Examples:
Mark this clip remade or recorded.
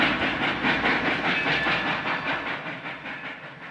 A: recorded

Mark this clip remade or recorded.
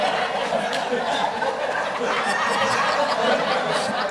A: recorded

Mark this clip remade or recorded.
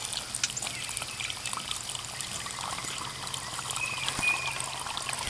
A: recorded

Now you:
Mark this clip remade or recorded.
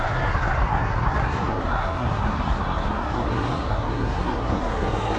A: remade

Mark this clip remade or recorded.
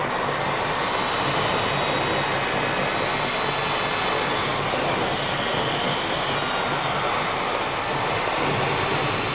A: recorded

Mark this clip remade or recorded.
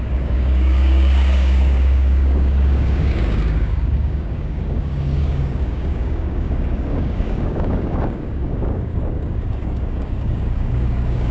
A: remade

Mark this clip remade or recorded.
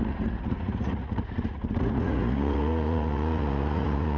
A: remade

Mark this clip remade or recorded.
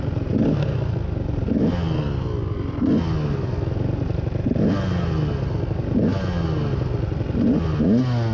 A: recorded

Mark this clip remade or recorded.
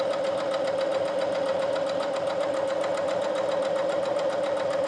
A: recorded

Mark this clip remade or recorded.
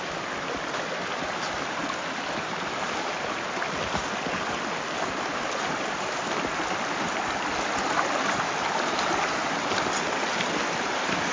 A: recorded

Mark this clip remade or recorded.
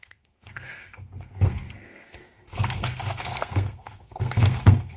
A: remade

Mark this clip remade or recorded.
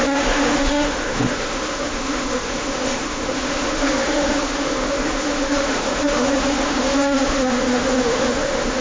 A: remade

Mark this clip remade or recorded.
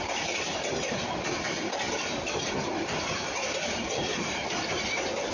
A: remade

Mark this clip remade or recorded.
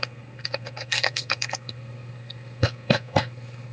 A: remade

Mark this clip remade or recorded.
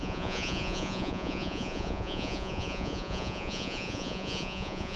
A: remade